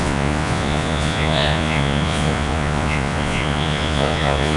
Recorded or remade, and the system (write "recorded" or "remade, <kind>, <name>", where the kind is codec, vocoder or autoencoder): remade, vocoder, Vocos